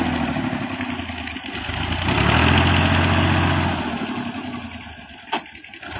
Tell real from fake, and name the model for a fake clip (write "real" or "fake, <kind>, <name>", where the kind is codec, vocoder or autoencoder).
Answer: real